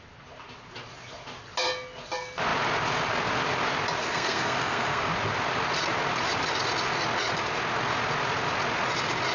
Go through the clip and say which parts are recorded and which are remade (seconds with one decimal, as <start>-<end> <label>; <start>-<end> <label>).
0.0-4.0 recorded; 4.0-5.1 remade; 5.1-9.3 recorded